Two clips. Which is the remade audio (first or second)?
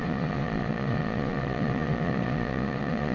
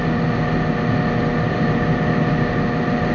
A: first